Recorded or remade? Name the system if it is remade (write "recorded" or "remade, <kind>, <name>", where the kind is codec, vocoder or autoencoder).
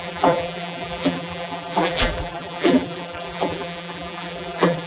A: remade, vocoder, BigVGAN v2